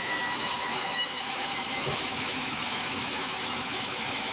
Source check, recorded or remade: remade